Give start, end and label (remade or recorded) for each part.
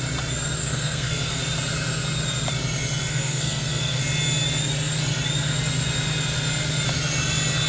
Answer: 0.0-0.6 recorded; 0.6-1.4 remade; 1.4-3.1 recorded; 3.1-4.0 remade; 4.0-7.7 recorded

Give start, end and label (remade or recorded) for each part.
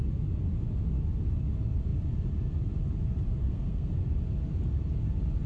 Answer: 0.0-3.4 recorded; 3.4-4.0 remade; 4.0-5.5 recorded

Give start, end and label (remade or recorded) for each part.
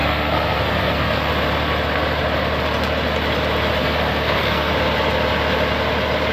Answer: 0.0-1.3 remade; 1.3-3.8 recorded; 3.8-4.7 remade; 4.7-6.3 recorded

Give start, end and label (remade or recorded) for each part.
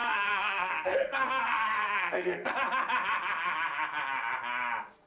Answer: 0.0-2.5 remade; 2.5-5.1 recorded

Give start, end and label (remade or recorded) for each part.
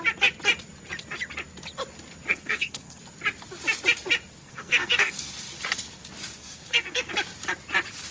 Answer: 0.0-2.3 recorded; 2.3-3.0 remade; 3.0-4.4 recorded; 4.4-5.3 remade; 5.3-6.4 recorded; 6.4-7.1 remade; 7.1-8.1 recorded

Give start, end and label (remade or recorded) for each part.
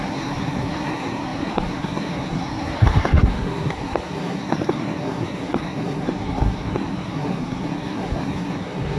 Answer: 0.0-9.0 remade